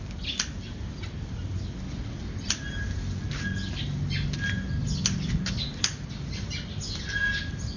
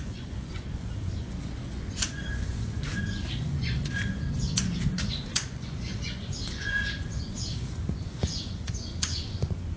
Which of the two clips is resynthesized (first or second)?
second